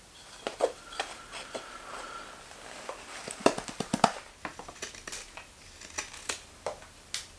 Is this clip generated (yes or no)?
no